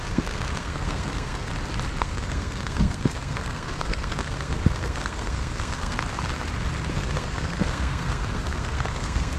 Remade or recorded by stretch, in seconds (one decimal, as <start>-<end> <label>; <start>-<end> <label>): 0.0-1.5 remade; 1.5-2.0 recorded; 2.0-6.0 remade; 6.0-6.9 recorded; 6.9-9.4 remade